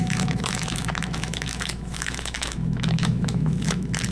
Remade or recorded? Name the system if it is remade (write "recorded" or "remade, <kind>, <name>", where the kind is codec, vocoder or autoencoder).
remade, autoencoder, DAC-VAE